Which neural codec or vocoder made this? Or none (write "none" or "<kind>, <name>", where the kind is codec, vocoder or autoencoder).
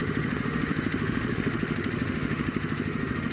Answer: autoencoder, DAC-VAE